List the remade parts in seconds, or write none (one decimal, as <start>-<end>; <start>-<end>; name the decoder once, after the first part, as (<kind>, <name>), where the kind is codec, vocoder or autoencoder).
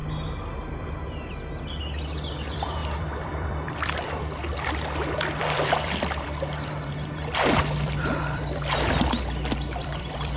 2.3-10.4 (vocoder, BigVGAN v2)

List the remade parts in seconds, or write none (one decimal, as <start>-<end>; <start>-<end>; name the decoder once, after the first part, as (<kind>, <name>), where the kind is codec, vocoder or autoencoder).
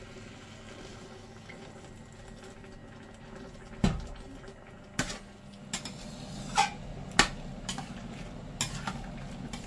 none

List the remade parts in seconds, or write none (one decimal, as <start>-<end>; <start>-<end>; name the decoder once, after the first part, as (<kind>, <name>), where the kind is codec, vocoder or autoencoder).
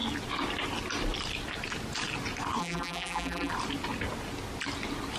2.6-3.5 (vocoder, BigVGAN v2)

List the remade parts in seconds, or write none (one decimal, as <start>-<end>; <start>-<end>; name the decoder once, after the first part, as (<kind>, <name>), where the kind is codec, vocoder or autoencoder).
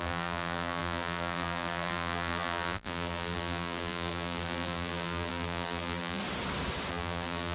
0.0-6.2 (vocoder, BigVGAN v2); 6.9-7.5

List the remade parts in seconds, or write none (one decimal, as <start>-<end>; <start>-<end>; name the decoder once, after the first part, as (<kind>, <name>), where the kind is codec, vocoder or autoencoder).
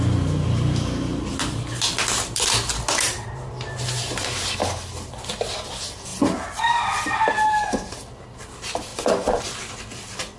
6.1-7.9 (vocoder, BigVGAN v2)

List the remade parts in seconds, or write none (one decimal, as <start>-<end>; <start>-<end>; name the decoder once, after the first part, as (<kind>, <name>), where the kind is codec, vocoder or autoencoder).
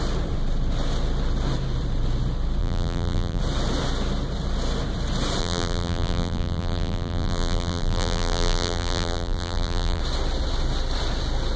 2.6-3.4 (vocoder, BigVGAN v2); 5.4-10.0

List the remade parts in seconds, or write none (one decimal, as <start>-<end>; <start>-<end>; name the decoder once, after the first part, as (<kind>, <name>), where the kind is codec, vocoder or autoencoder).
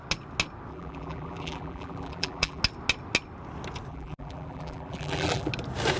0.7-2.6 (vocoder, BigVGAN v2); 3.9-5.5